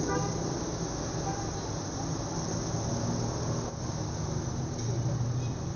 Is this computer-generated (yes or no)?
no